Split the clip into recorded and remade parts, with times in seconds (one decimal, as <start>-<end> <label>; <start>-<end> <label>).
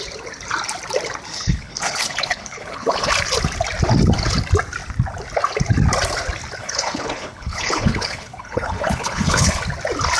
0.0-1.3 recorded; 1.3-3.1 remade; 3.1-6.6 recorded; 6.6-9.6 remade; 9.6-10.2 recorded